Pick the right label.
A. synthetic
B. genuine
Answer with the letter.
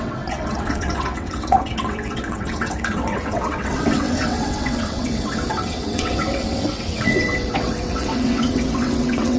A